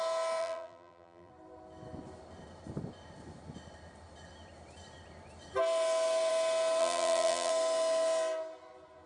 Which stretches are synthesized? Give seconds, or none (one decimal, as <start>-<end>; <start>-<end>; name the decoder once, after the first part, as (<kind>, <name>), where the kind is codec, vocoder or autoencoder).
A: 0.4-1.3 (vocoder, BigVGAN v2); 6.8-7.5